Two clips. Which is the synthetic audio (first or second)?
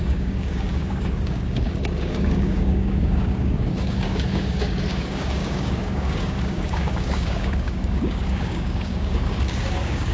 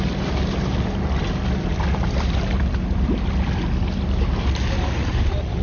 first